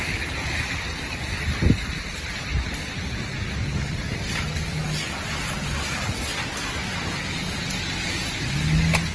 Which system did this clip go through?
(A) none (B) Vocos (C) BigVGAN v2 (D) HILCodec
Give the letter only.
A